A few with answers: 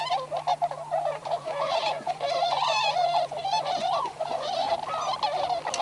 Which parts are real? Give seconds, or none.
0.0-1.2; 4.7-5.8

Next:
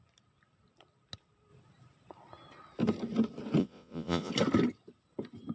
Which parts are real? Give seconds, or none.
0.0-3.6; 4.3-5.5

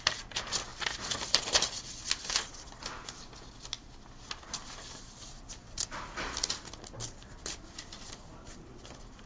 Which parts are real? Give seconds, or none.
0.0-9.3

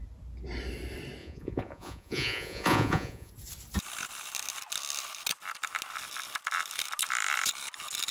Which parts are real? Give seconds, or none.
0.0-1.2; 3.3-8.1